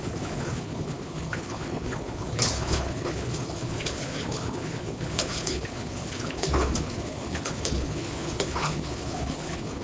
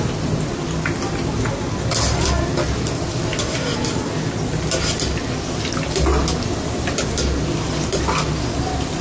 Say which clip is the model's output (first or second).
first